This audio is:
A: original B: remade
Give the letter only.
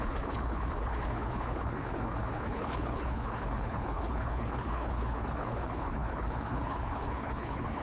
B